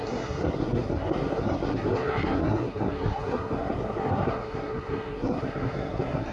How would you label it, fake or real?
fake